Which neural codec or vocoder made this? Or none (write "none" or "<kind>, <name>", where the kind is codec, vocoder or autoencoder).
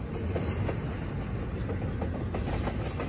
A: none